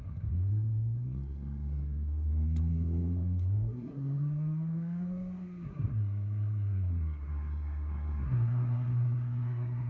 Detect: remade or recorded remade